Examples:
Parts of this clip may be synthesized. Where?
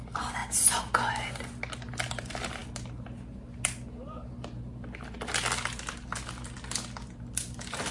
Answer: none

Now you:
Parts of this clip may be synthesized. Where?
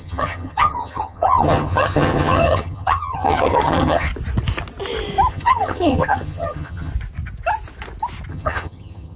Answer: 0.0-4.1 (vocoder, HiFi-GAN); 5.3-6.9; 8.3-9.2